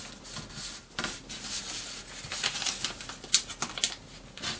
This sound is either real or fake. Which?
real